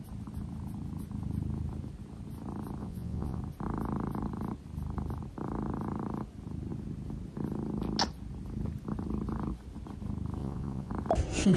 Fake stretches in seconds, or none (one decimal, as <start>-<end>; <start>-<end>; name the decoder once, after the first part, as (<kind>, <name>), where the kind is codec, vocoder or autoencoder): 2.8-3.4 (vocoder, Vocos); 10.4-10.9